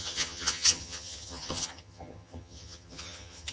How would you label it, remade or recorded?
remade